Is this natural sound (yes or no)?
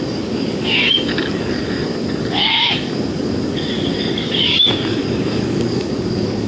no